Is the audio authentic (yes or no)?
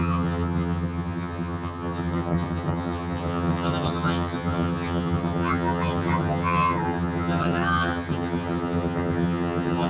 no